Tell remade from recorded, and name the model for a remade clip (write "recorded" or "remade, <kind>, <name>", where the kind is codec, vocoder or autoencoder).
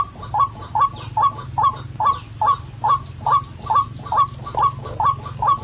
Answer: recorded